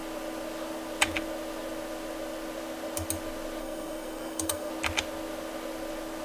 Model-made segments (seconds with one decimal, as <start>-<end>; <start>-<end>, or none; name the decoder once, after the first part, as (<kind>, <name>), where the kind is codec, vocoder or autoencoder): 3.6-4.7 (codec, SNAC)